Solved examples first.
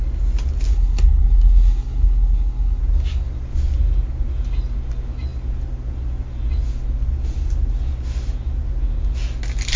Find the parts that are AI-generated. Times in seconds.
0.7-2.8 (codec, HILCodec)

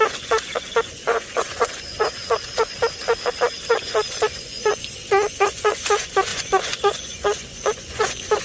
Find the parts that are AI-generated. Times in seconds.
0.0-2.5 (vocoder, Vocos); 3.7-8.4

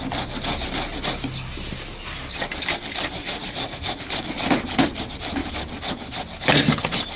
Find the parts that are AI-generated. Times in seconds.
3.2-4.0 (vocoder, Vocos)

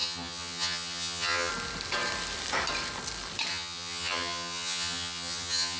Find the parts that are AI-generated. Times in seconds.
0.0-1.5 (vocoder, HiFi-GAN); 3.5-5.8